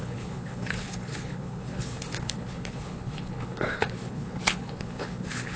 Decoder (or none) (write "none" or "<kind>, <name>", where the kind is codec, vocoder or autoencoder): codec, HILCodec